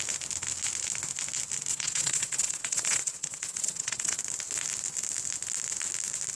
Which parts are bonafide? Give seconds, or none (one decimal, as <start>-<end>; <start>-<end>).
0.0-1.7; 4.2-6.3